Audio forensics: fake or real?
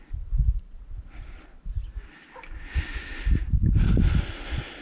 real